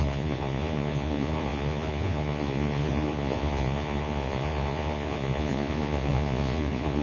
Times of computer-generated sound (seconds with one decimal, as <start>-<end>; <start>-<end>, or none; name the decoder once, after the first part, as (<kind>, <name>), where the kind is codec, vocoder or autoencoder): 0.0-7.0 (vocoder, Vocos)